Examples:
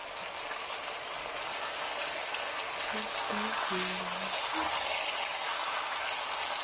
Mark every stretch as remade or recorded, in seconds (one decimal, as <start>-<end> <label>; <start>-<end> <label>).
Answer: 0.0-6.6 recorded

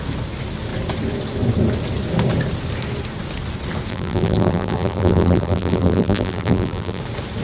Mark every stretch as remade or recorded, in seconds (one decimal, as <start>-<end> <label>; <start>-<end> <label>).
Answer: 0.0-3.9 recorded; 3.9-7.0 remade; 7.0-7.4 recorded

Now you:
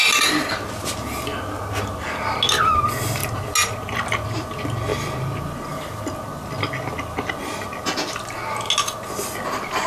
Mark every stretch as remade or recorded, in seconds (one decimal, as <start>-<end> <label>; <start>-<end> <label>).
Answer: 0.0-9.9 recorded

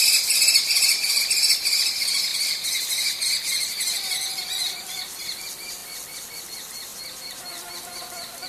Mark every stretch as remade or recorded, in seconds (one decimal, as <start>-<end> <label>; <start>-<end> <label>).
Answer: 0.0-2.3 remade; 2.3-3.4 recorded; 3.4-5.8 remade; 5.8-6.4 recorded; 6.4-8.5 remade

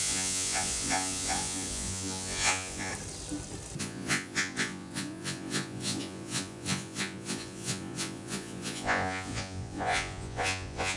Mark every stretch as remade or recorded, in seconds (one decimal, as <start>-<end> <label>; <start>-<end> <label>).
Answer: 0.0-2.9 remade; 2.9-3.8 recorded; 3.8-11.0 remade

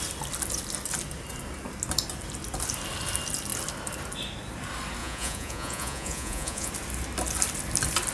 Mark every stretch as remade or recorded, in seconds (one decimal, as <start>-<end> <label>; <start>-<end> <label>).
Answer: 0.0-5.0 recorded; 5.0-6.7 remade; 6.7-8.1 recorded